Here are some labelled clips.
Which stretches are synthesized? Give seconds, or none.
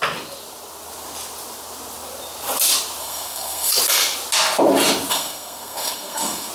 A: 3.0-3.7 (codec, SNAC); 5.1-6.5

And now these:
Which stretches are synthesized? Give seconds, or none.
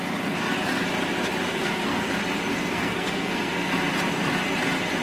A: 1.5-2.1 (codec, SNAC); 2.5-3.7